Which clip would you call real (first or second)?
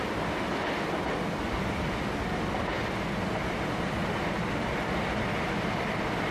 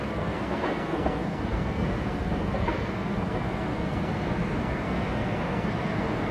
first